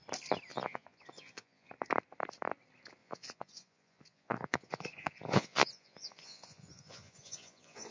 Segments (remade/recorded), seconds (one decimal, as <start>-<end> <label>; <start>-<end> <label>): 0.0-0.5 recorded; 0.5-1.7 remade; 1.7-3.0 recorded; 3.0-7.9 remade